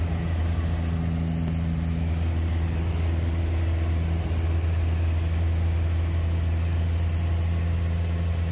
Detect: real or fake real